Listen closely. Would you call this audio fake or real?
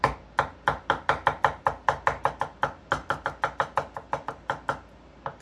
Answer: real